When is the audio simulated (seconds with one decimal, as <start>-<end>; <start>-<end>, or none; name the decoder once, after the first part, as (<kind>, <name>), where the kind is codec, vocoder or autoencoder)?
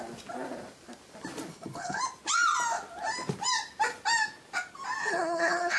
1.5-2.0 (codec, HILCodec); 5.0-5.8